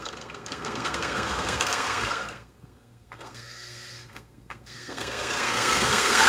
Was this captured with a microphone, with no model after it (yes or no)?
no